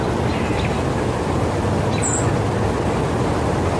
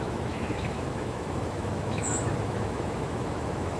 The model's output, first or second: second